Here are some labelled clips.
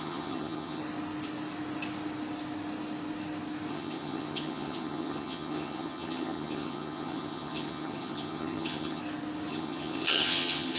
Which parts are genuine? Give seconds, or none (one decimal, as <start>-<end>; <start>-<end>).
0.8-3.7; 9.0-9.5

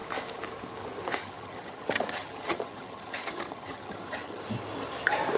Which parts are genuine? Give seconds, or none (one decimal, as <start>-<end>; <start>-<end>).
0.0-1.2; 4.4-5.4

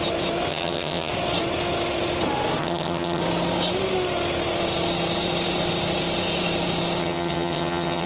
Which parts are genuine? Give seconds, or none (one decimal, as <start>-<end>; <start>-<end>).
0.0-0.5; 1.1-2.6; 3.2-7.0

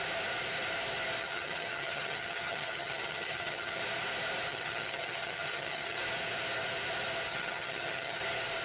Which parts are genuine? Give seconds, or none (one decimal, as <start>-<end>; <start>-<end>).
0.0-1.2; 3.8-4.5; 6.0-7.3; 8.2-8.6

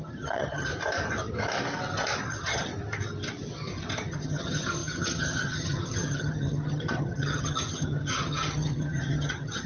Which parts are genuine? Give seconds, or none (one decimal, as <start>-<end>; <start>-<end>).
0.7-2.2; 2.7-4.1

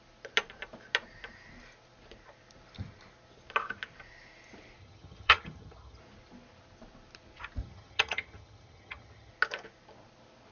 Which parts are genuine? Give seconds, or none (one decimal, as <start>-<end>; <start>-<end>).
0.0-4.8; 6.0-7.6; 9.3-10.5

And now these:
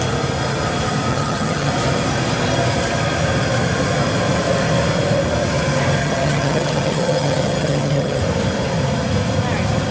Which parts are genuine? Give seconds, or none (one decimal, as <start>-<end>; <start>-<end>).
0.0-1.1; 1.7-6.0; 8.2-9.9